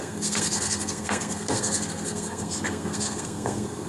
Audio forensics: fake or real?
fake